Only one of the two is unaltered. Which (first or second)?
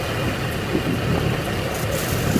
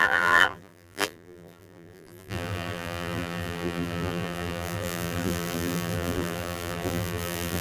first